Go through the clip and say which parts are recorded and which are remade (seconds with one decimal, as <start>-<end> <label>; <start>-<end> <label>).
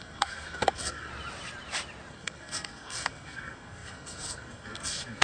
0.0-1.1 remade; 1.1-2.1 recorded; 2.1-5.2 remade